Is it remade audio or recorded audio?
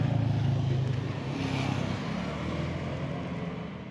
recorded